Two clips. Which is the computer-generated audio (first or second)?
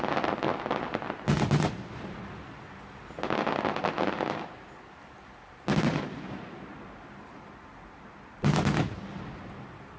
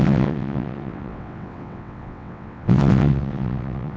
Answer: second